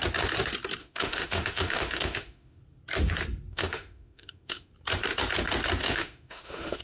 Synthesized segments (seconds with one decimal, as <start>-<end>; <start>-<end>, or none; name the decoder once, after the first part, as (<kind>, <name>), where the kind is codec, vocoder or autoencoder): 0.8-2.6 (autoencoder, DAC-VAE); 3.5-4.7; 5.8-6.8